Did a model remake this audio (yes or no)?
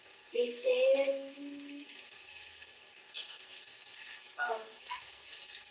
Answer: yes